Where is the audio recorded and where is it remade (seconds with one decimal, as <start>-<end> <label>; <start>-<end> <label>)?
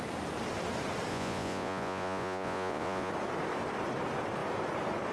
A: 0.0-1.1 recorded; 1.1-3.1 remade; 3.1-5.1 recorded